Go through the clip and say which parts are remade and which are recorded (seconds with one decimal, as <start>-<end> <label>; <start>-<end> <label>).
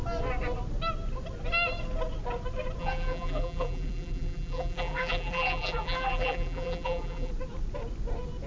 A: 0.0-2.8 recorded; 2.8-7.3 remade; 7.3-8.5 recorded